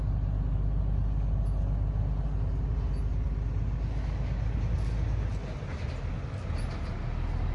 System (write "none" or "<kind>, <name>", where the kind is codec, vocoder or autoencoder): none